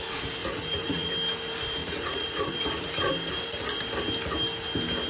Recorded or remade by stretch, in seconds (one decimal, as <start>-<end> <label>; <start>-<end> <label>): 0.0-0.4 recorded; 0.4-1.1 remade; 1.1-1.8 recorded; 1.8-3.1 remade; 3.1-5.1 recorded